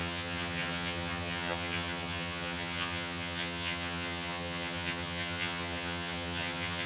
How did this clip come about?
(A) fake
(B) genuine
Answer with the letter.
A